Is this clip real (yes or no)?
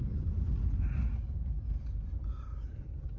yes